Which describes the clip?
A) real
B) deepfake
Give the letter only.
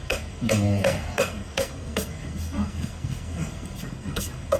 B